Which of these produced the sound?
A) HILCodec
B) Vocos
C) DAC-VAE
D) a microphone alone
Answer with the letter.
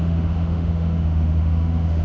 C